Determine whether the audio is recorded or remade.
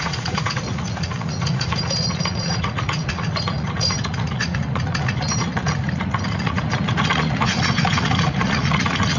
remade